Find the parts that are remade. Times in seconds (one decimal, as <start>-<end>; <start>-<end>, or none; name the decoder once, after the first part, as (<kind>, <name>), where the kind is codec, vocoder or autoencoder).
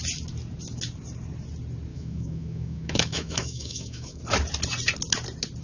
1.9-4.2 (autoencoder, DAC-VAE)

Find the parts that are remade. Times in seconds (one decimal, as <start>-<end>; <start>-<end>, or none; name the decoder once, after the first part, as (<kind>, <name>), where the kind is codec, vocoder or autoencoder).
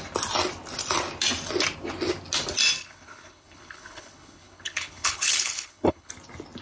2.8-6.1 (codec, HILCodec)